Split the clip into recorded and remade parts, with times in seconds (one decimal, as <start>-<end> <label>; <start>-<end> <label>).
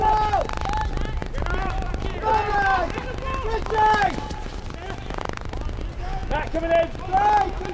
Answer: 0.0-7.7 recorded